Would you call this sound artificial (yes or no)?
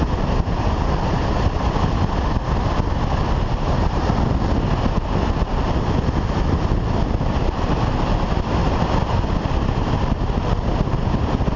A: no